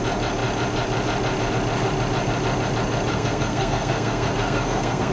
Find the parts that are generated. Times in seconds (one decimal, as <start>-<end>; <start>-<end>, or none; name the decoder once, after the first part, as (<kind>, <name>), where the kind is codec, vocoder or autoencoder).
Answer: 3.1-5.1 (codec, SNAC)

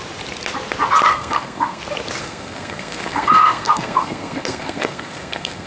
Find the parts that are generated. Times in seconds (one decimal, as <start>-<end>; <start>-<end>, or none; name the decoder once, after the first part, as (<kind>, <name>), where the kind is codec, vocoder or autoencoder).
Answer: 1.1-1.8 (codec, SNAC); 2.2-5.7